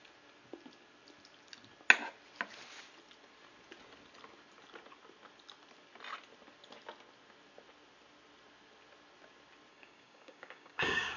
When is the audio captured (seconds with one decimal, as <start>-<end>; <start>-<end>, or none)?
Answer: 0.0-9.7